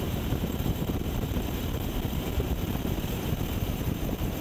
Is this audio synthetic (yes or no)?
yes